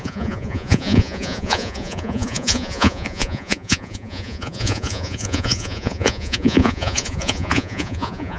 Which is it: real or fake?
fake